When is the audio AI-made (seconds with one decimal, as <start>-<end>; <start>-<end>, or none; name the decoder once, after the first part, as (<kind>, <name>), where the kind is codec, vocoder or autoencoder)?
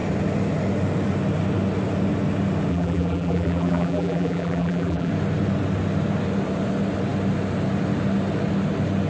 2.7-5.1 (vocoder, BigVGAN v2)